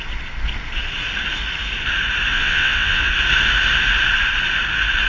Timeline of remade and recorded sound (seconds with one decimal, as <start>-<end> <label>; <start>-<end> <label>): 0.0-2.3 recorded; 2.3-3.1 remade; 3.1-5.1 recorded